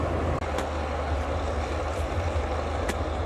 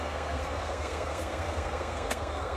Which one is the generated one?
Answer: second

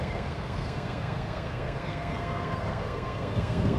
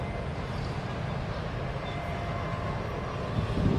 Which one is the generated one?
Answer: first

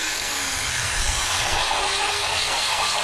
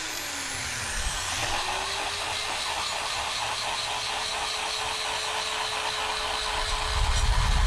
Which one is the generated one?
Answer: first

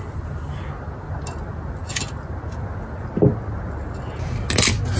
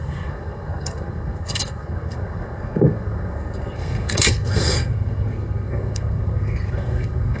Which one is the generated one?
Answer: second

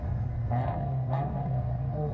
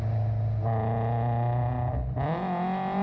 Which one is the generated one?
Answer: first